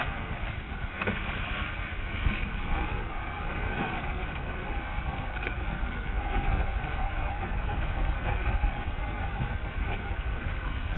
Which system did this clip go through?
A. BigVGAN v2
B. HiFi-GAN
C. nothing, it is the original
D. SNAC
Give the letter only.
D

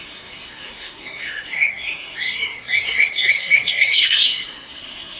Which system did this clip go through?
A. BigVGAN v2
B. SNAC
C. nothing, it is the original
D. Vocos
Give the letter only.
B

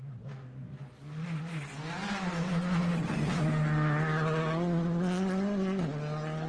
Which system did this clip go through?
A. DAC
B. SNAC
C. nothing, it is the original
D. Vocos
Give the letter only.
C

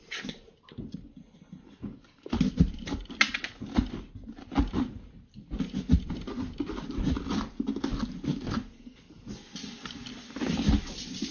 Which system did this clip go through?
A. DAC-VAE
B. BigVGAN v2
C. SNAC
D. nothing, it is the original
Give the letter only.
D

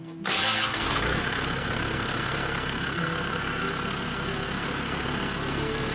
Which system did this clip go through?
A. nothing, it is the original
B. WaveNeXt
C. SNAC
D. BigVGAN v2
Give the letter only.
C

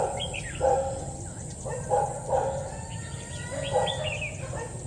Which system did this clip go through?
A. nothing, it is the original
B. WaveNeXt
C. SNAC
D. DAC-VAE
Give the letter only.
A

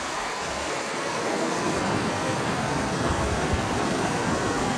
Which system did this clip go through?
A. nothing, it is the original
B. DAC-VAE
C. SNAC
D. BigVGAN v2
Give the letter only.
C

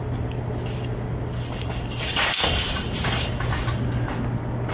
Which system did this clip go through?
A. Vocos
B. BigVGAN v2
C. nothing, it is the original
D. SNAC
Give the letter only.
C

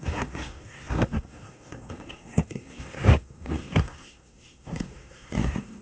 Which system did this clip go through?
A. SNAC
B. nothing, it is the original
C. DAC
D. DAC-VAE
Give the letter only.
A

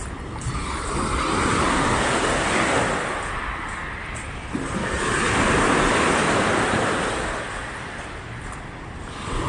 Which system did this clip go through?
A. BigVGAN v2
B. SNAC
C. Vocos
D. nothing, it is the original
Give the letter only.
D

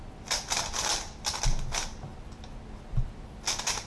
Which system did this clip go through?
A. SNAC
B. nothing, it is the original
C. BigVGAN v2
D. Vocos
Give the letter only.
B